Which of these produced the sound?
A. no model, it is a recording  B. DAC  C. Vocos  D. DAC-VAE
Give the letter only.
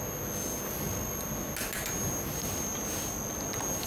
A